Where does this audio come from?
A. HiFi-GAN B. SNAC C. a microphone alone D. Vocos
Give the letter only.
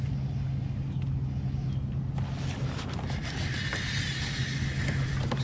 C